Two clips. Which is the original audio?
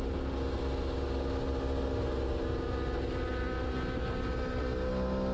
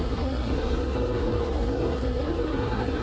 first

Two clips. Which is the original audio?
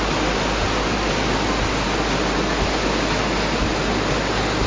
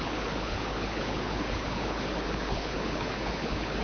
first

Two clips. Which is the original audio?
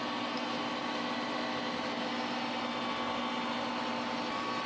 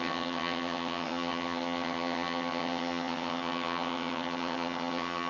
first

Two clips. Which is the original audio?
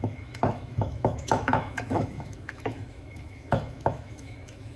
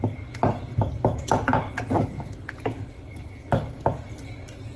second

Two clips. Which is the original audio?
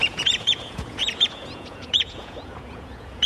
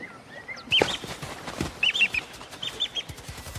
second